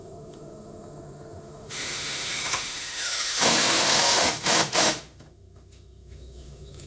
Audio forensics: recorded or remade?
remade